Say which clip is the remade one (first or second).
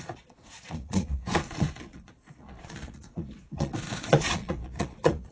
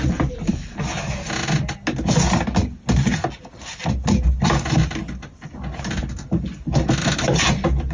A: first